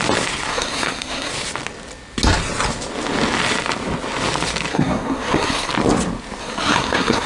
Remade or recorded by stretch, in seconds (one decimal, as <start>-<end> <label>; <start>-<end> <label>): 0.0-0.5 recorded; 0.5-1.3 remade; 1.3-4.7 recorded; 4.7-5.7 remade; 5.7-6.4 recorded; 6.4-7.3 remade